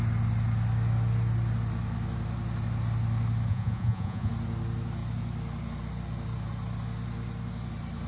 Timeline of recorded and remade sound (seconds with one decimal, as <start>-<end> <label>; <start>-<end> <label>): 0.0-3.5 recorded; 3.5-4.3 remade; 4.3-8.1 recorded